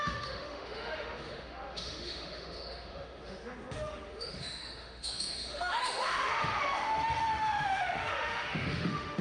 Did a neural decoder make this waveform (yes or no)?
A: yes